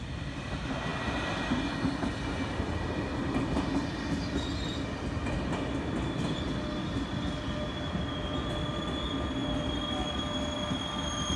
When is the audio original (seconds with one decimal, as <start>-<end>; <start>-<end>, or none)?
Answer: 0.0-11.4